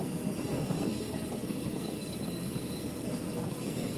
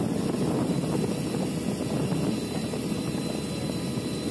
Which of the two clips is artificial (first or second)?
first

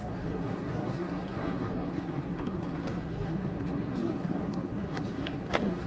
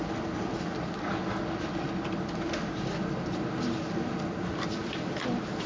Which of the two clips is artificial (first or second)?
first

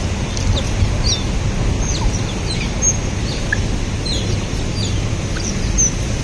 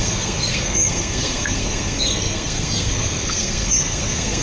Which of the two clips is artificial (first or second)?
second